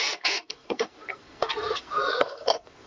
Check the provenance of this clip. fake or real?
fake